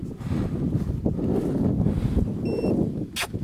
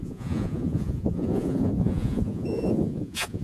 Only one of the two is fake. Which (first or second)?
second